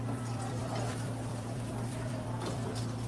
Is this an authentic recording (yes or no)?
no